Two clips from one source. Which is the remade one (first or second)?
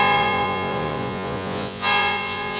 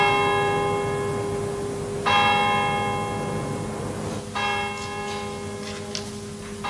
first